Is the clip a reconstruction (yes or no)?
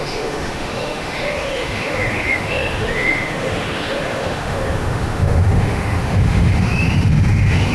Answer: yes